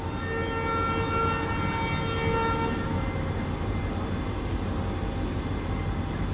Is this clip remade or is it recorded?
recorded